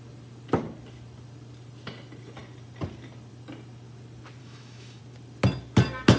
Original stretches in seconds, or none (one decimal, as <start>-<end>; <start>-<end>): 0.0-4.4; 5.0-6.2